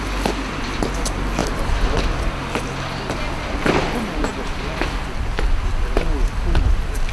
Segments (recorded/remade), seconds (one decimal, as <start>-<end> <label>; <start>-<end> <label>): 0.0-7.1 recorded